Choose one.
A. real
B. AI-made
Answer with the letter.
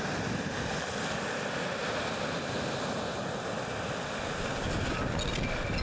A